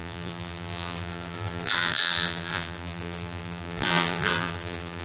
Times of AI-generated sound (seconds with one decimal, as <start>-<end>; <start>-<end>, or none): 0.0-5.0